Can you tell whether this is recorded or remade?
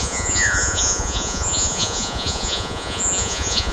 remade